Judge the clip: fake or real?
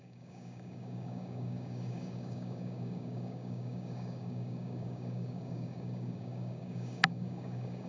fake